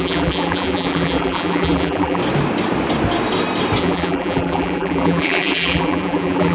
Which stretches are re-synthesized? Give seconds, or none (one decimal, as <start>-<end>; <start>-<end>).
0.0-2.2; 3.8-6.5

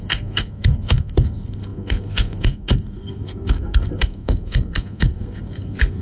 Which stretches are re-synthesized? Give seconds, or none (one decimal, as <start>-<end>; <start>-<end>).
0.0-6.0

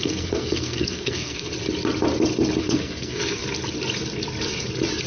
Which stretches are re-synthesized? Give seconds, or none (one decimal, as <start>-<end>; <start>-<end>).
0.0-1.5; 2.6-3.4

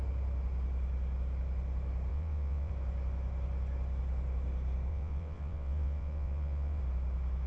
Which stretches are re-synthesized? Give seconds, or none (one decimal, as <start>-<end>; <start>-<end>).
2.1-2.7; 4.9-6.8

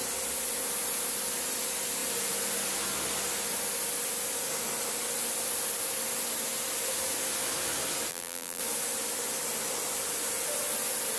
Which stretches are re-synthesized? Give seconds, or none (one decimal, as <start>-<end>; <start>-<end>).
8.1-8.6

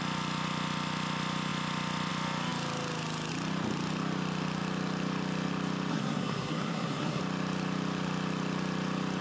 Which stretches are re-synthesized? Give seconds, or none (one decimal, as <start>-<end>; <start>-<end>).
5.9-7.2

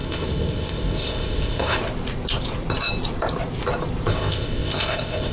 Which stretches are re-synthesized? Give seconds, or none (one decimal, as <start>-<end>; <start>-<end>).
0.0-1.8; 4.1-5.3

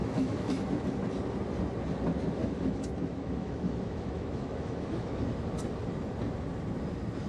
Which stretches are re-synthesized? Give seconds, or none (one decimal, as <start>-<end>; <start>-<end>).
0.0-0.8; 2.4-5.2